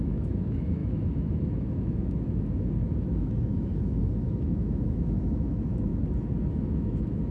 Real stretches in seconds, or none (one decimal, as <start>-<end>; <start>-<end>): 5.9-6.5